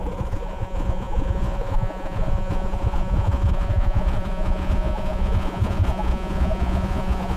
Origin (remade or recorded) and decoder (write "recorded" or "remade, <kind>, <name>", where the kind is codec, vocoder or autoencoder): remade, vocoder, Vocos